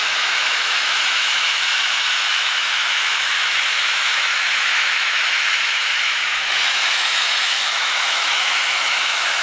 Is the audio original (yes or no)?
no